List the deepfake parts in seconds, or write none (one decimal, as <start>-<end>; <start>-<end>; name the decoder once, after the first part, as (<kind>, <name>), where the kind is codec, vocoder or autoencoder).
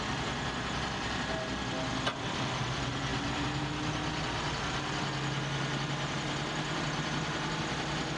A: none